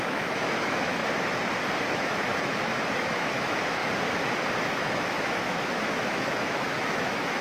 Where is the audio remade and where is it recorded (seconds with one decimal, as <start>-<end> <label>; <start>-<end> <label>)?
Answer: 0.0-1.0 remade; 1.0-1.9 recorded; 1.9-3.8 remade; 3.8-4.6 recorded; 4.6-7.4 remade